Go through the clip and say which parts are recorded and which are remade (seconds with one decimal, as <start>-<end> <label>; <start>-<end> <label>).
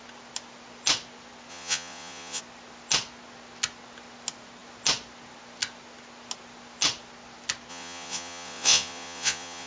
0.0-1.5 recorded; 1.5-2.4 remade; 2.4-7.7 recorded; 7.7-9.7 remade